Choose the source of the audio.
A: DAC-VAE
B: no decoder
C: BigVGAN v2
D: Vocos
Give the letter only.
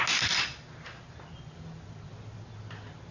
B